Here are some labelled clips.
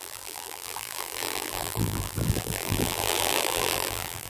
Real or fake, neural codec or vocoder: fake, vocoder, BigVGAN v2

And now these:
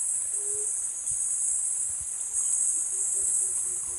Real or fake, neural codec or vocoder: real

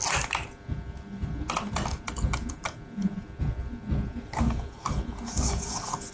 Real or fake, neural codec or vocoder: real